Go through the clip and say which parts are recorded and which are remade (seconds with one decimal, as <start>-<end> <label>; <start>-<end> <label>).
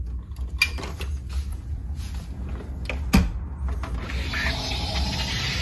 0.0-1.5 recorded; 1.5-2.1 remade; 2.1-5.6 recorded